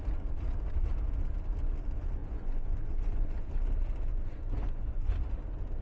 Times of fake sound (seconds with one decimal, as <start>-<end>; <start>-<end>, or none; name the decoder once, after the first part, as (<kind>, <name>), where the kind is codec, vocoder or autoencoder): 2.2-3.5 (vocoder, Vocos); 4.1-5.2